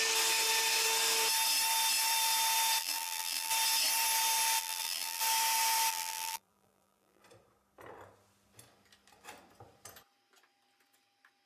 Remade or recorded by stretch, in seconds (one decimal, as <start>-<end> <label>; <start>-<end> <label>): 0.0-2.8 recorded; 2.8-3.5 remade; 3.5-4.6 recorded; 4.6-5.2 remade; 5.2-5.9 recorded; 5.9-7.2 remade; 7.2-11.5 recorded